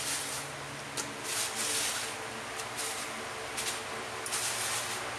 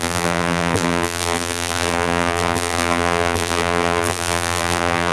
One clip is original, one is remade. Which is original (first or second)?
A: first